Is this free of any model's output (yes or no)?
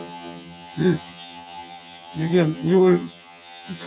no